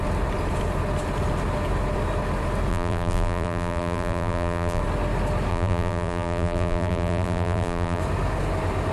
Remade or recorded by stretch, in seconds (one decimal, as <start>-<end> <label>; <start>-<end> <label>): 0.0-2.7 recorded; 2.7-4.8 remade; 4.8-5.5 recorded; 5.5-8.0 remade; 8.0-8.9 recorded